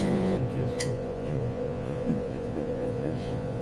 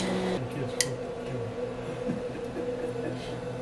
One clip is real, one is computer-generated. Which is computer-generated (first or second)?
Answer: first